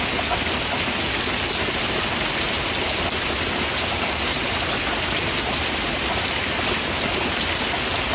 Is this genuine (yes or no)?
yes